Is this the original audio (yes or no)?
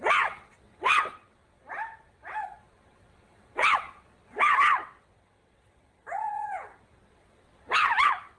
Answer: no